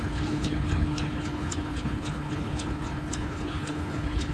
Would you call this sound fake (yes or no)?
yes